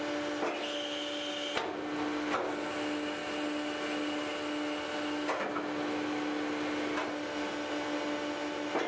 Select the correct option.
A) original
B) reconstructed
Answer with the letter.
A